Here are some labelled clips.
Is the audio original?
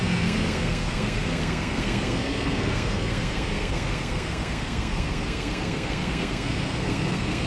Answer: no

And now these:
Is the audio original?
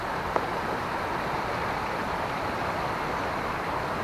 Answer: no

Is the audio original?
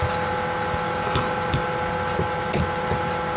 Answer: yes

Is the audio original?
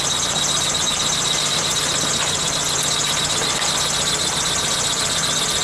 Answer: yes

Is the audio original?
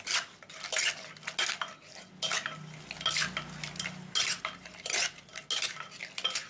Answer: yes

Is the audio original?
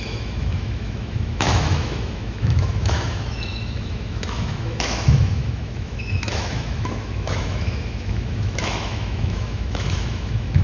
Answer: no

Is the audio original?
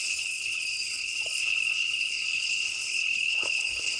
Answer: no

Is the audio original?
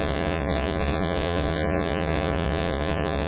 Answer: no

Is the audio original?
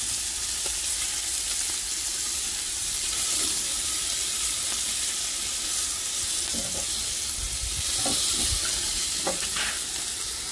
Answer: yes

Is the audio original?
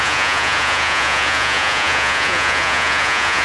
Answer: no